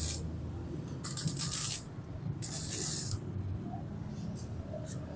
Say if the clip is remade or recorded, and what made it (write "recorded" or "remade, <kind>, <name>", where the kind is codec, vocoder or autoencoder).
recorded